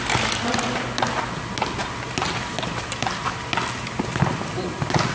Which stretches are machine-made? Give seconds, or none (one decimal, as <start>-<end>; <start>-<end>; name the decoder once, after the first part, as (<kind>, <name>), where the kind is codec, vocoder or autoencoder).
none